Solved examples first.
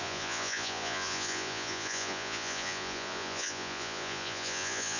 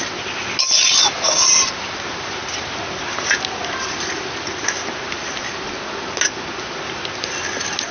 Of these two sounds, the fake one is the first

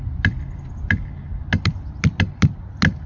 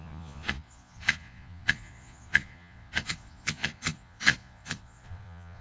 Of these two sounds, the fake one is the second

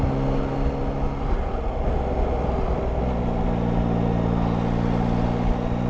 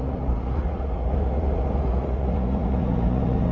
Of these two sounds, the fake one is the second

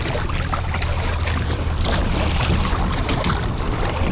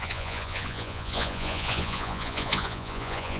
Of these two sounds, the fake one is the second